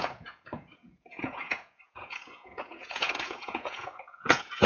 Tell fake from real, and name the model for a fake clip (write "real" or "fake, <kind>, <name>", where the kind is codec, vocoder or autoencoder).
fake, vocoder, Vocos